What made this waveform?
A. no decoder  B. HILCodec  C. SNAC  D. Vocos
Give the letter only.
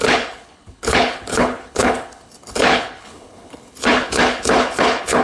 B